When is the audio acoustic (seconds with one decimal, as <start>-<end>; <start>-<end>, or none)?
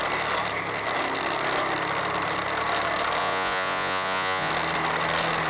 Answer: 0.0-3.2; 4.5-5.5